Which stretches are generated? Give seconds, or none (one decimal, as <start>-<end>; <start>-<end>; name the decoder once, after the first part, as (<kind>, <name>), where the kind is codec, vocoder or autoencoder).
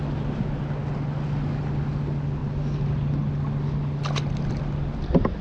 none